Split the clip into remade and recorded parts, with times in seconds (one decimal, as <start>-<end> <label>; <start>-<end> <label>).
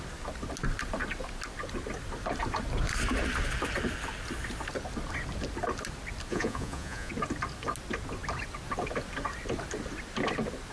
0.0-6.3 recorded; 6.3-7.1 remade; 7.1-10.7 recorded